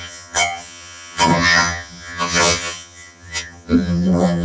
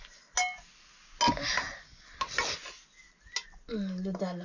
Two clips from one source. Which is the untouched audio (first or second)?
second